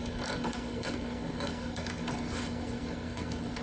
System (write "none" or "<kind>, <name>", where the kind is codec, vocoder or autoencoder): codec, SNAC